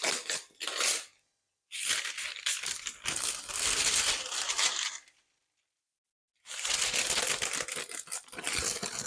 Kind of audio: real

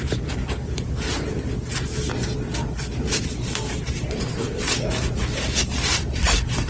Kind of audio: real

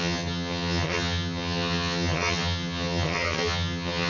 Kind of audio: fake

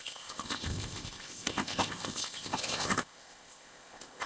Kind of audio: fake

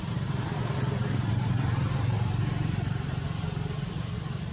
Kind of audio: fake